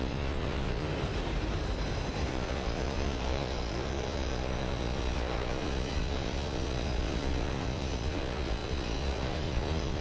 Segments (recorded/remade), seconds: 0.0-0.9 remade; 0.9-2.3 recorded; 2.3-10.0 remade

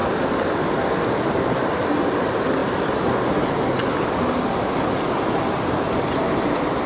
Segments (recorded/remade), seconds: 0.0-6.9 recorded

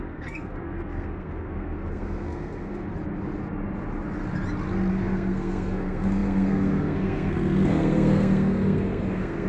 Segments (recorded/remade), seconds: 0.0-2.9 remade; 2.9-4.9 recorded; 4.9-9.5 remade